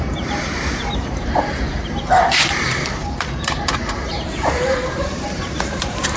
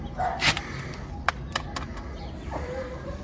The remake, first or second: first